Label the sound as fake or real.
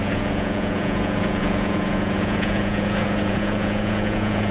fake